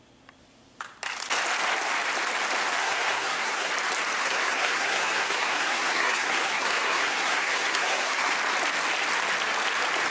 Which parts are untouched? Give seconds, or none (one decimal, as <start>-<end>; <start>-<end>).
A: 0.0-2.8; 3.7-4.2; 8.3-10.1